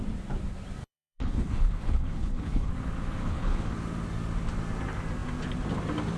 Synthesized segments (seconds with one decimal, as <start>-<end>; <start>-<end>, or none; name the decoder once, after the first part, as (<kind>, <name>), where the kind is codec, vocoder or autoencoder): 0.8-2.7 (codec, HILCodec); 3.2-3.7